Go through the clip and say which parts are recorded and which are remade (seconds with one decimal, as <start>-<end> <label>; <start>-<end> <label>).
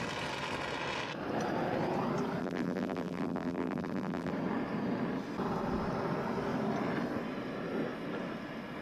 0.0-2.4 recorded; 2.4-4.3 remade; 4.3-8.8 recorded